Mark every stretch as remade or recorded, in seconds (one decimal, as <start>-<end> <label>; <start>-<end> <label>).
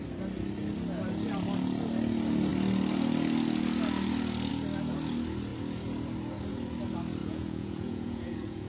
0.0-7.2 recorded; 7.2-8.7 remade